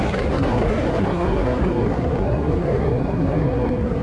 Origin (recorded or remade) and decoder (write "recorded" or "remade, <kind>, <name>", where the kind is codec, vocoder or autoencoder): remade, codec, SNAC